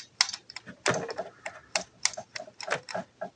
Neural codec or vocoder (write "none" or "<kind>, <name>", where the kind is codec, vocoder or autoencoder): none